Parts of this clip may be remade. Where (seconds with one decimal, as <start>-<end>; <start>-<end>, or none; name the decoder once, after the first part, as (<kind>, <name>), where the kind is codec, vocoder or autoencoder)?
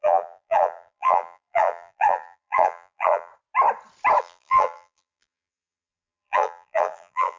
0.0-3.3 (vocoder, BigVGAN v2); 4.2-7.4